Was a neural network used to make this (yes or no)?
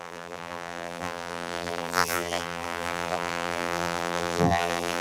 yes